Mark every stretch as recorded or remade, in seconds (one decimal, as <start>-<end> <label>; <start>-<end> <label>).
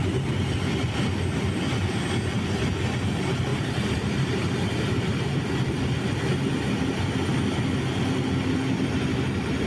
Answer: 0.0-3.5 recorded; 3.5-6.8 remade; 6.8-9.7 recorded